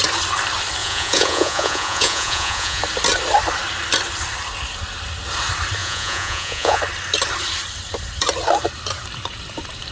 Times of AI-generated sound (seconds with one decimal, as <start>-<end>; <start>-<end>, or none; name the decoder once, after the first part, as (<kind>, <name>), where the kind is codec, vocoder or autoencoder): 0.8-2.8 (vocoder, Vocos); 5.8-6.8